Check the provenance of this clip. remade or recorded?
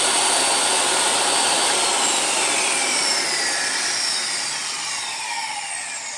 recorded